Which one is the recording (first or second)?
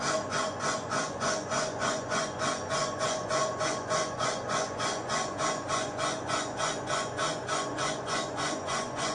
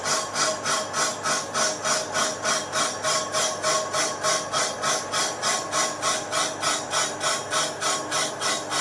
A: second